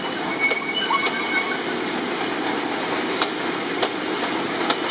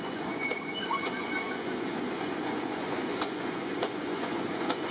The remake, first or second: second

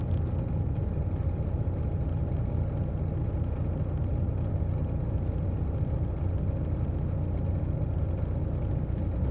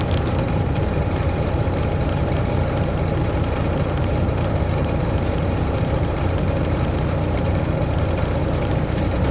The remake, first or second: second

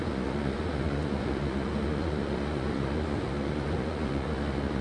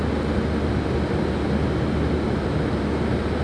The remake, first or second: first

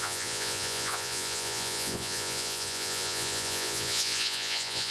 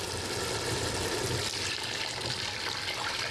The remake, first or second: first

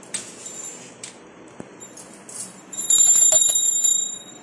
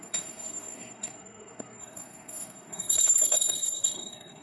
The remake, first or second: second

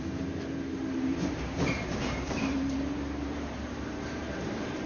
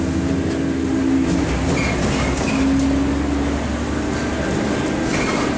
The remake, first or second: first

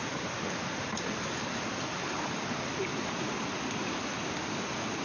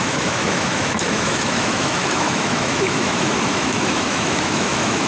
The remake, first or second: second